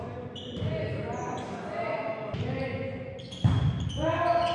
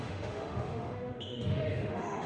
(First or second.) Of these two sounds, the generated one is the second